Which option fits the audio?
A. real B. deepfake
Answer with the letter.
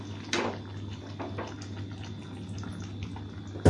A